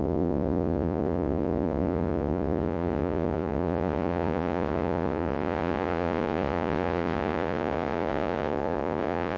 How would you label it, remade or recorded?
remade